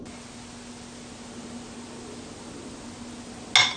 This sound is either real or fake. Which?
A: real